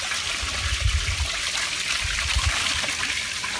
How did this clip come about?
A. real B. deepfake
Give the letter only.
A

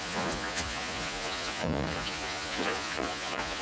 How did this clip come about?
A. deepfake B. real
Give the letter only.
A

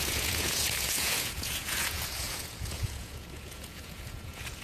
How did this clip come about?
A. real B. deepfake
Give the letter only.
B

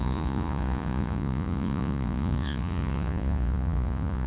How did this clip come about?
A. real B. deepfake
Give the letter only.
B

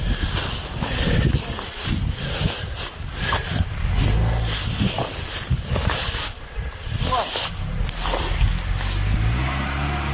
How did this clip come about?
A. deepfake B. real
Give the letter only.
B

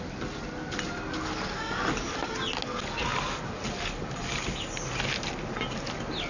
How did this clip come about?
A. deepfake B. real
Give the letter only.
B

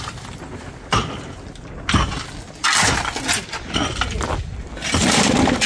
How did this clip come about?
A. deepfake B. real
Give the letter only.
B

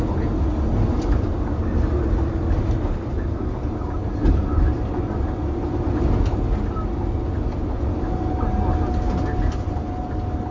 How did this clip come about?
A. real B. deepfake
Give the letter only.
A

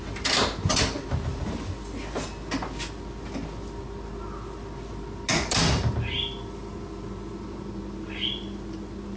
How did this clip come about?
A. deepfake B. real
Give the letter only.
B